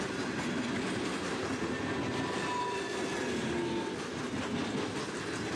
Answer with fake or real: real